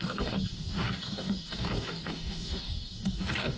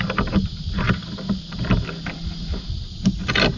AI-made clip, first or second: first